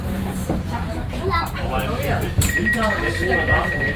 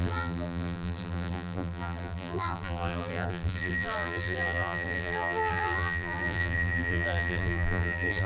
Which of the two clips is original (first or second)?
first